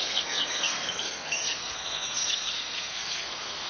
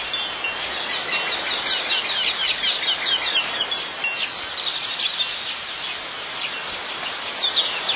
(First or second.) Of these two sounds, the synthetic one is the first